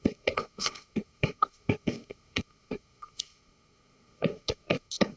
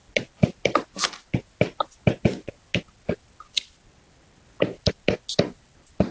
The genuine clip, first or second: second